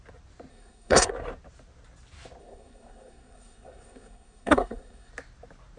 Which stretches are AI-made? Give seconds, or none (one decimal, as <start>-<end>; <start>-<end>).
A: 0.5-1.1; 2.4-5.1